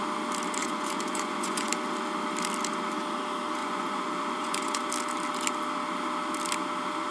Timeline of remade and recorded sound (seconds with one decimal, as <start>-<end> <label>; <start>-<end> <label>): 0.0-0.6 recorded; 0.6-1.7 remade; 1.7-3.6 recorded; 3.6-4.8 remade; 4.8-7.1 recorded